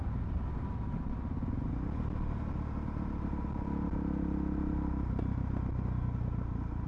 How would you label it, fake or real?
real